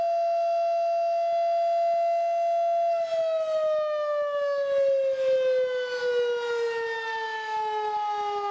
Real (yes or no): yes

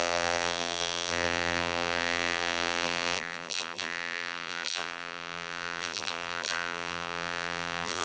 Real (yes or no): no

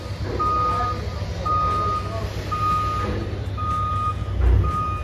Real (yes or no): yes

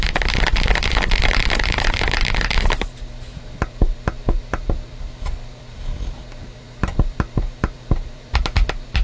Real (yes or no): no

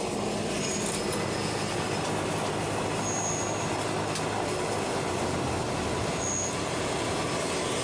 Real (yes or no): yes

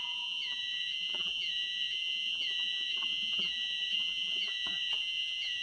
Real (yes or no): no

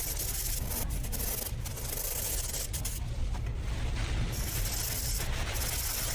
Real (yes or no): yes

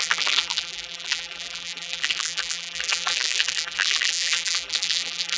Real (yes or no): no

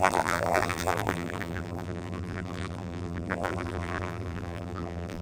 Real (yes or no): no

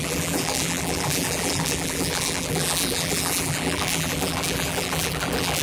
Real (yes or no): no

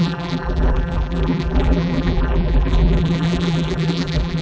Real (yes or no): no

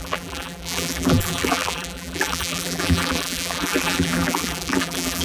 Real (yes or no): no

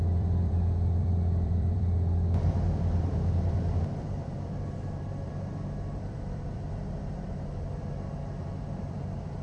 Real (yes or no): no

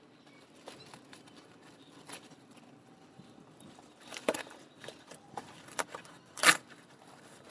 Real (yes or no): no